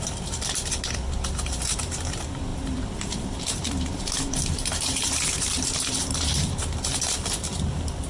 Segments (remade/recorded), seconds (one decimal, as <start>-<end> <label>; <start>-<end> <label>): 0.0-8.1 remade